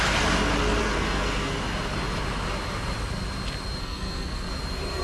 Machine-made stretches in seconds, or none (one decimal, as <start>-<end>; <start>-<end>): 0.8-1.5; 3.8-4.5